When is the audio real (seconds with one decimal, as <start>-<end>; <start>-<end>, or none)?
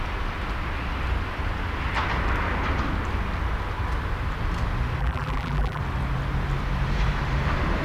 0.0-5.0; 5.8-7.8